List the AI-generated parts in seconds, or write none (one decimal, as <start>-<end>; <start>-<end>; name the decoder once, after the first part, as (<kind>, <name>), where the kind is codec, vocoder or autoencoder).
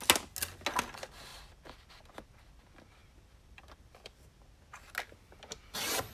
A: 1.3-1.9 (vocoder, BigVGAN v2); 3.0-4.2